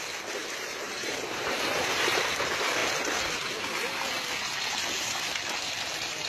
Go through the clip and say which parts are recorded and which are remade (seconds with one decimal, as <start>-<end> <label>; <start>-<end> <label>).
0.0-0.4 recorded; 0.4-2.3 remade; 2.3-6.3 recorded